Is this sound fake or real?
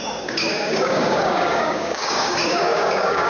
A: fake